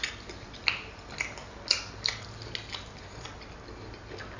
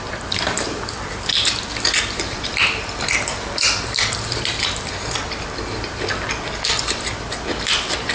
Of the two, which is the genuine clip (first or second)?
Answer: first